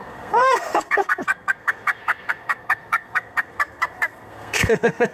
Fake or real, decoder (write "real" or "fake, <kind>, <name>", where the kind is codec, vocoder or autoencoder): fake, codec, SNAC